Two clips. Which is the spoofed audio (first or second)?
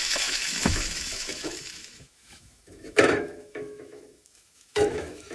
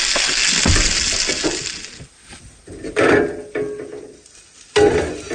first